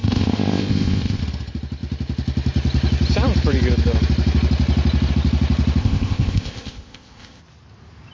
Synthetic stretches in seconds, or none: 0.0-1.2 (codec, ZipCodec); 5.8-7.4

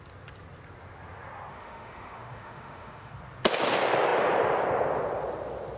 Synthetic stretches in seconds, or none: 1.5-3.1 (autoencoder, DAC-VAE)

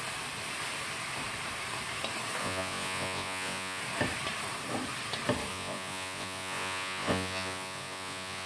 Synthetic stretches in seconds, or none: 2.4-3.8 (vocoder, Vocos); 5.5-8.5

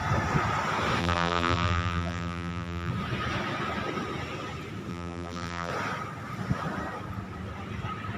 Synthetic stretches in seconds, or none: 1.0-2.9 (vocoder, BigVGAN v2); 4.9-5.7